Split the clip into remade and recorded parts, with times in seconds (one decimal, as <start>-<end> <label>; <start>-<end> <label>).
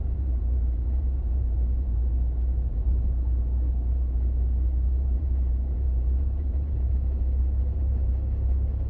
0.0-2.1 remade; 2.1-4.9 recorded; 4.9-8.1 remade; 8.1-8.9 recorded